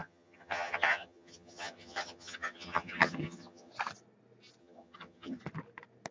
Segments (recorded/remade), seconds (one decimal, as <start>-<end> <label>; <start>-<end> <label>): 0.0-3.7 remade; 3.7-4.6 recorded; 4.6-5.4 remade; 5.4-6.1 recorded